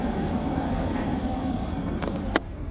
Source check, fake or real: fake